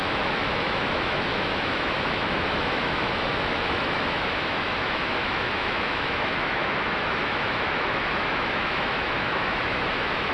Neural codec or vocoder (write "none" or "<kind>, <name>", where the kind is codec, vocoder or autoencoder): autoencoder, DAC-VAE